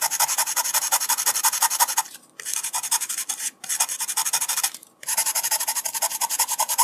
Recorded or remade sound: remade